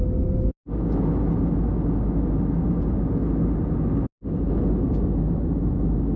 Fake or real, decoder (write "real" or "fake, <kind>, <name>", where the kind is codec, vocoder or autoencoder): real